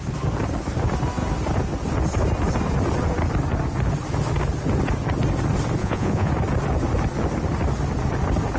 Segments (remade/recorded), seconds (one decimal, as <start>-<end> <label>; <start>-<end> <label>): 0.0-5.8 recorded; 5.8-6.3 remade; 6.3-8.6 recorded